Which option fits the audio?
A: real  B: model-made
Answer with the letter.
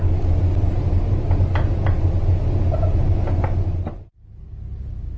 A